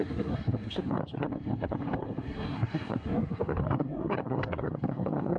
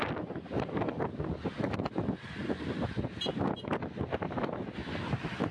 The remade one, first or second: first